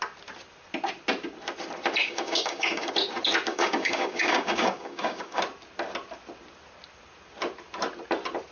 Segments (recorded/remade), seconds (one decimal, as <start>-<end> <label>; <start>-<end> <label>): 0.0-2.0 recorded; 2.0-2.9 remade; 2.9-3.5 recorded; 3.5-5.4 remade; 5.4-8.5 recorded